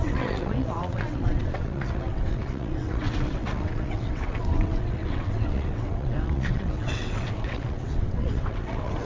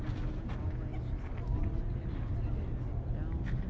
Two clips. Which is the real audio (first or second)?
second